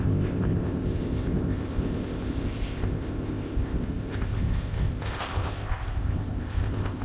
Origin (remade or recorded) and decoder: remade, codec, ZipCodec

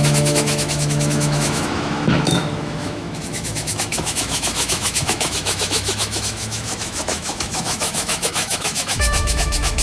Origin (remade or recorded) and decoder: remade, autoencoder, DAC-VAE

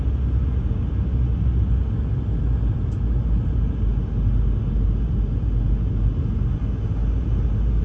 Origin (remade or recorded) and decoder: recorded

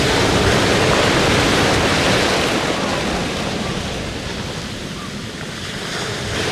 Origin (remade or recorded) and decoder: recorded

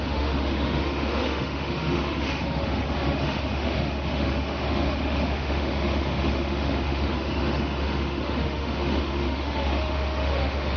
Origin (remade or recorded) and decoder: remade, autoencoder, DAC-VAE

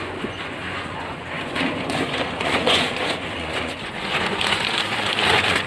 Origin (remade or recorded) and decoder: remade, vocoder, Vocos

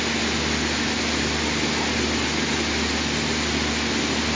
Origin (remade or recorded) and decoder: recorded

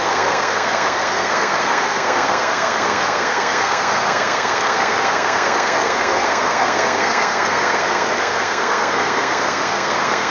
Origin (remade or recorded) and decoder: remade, codec, SNAC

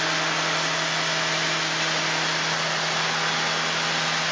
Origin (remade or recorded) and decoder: recorded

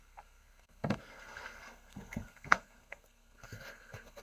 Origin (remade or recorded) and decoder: remade, codec, SNAC